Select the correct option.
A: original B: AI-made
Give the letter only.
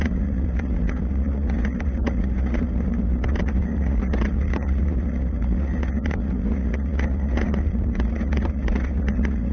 B